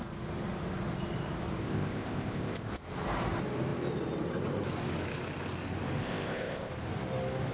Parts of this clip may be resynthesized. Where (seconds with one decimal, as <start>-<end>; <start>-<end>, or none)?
1.6-2.7; 6.0-6.7